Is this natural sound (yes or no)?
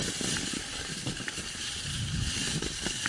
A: yes